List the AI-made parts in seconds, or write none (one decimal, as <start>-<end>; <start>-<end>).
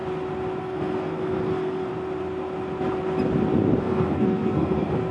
0.6-1.9; 3.8-5.1